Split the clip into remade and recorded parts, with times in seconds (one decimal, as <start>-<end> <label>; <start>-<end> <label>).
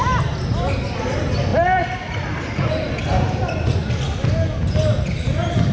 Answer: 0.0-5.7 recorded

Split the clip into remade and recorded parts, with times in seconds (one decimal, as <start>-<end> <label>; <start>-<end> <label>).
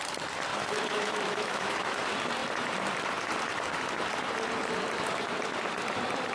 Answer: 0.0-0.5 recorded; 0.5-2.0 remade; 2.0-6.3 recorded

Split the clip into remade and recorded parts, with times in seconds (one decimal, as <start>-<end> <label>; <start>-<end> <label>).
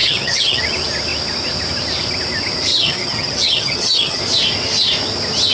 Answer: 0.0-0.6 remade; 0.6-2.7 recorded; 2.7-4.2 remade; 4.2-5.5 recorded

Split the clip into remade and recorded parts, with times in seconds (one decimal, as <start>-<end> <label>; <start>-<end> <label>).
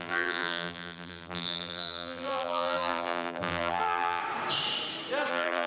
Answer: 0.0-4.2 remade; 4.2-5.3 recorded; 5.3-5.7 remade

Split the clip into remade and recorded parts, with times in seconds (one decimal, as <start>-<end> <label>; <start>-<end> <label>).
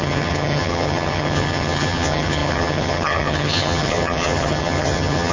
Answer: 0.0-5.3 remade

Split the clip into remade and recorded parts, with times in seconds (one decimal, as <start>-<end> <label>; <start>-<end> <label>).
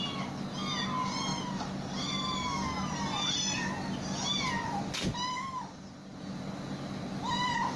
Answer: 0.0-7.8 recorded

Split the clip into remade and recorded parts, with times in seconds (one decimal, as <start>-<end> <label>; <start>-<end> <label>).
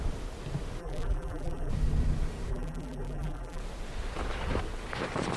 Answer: 0.0-0.8 recorded; 0.8-1.7 remade; 1.7-2.5 recorded; 2.5-3.6 remade; 3.6-5.4 recorded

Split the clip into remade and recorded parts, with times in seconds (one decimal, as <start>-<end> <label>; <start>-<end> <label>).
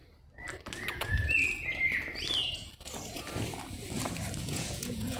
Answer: 0.0-0.9 recorded; 0.9-1.3 remade; 1.3-4.4 recorded; 4.4-5.2 remade